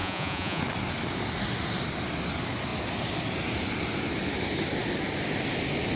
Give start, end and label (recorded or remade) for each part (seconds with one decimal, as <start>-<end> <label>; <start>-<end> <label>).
0.0-0.6 remade; 0.6-6.0 recorded